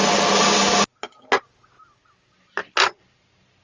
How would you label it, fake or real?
real